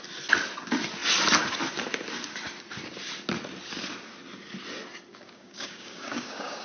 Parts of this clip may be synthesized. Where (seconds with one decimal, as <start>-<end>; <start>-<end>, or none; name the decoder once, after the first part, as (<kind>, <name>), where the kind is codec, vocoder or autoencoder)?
5.1-6.6 (codec, DAC)